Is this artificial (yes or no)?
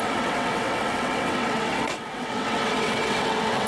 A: yes